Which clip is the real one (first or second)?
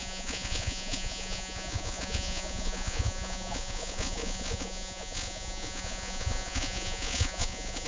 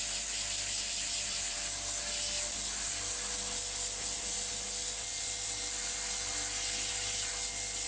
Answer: second